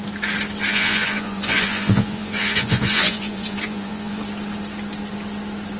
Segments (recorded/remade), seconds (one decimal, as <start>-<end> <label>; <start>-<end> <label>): 0.0-0.7 recorded; 0.7-4.2 remade; 4.2-5.8 recorded